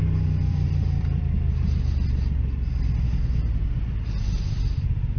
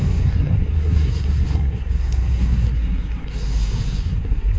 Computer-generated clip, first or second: second